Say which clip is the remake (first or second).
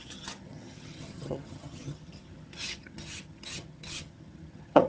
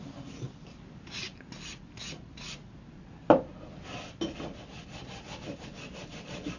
first